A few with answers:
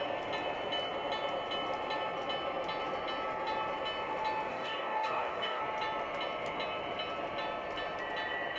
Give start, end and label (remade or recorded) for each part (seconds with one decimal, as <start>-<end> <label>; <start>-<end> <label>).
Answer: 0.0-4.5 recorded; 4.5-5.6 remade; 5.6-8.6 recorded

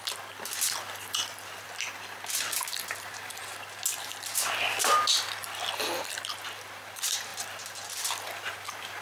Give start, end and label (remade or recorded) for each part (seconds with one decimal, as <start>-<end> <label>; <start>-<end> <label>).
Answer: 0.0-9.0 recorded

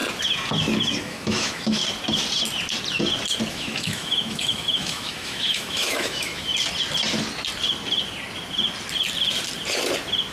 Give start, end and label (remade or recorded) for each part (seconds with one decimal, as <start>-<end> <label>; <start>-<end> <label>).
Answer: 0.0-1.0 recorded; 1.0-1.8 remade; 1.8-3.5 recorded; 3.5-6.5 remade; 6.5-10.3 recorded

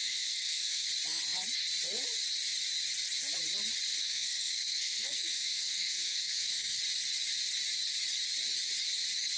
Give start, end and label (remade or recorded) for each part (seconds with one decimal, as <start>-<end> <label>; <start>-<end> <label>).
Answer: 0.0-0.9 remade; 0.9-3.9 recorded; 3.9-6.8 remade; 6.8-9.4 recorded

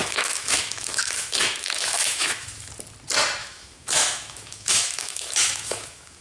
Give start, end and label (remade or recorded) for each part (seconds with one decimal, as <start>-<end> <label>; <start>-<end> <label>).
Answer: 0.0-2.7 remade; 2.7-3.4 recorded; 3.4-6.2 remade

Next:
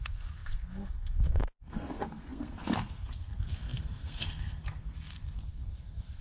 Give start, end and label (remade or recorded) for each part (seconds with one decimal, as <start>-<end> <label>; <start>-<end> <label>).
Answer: 0.0-6.2 remade

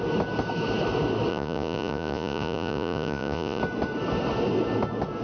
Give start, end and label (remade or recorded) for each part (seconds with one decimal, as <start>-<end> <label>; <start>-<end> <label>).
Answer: 0.0-1.3 recorded; 1.3-3.6 remade; 3.6-5.2 recorded

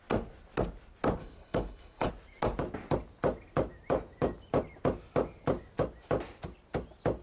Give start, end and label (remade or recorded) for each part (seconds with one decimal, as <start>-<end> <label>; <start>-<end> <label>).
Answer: 0.0-1.2 recorded; 1.2-2.1 remade; 2.1-7.2 recorded